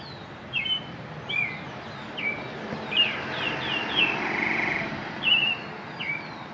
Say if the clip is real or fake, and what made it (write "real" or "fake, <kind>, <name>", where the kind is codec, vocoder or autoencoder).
real